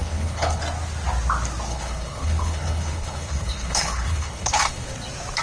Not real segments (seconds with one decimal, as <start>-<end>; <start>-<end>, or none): 0.0-0.6; 1.7-4.9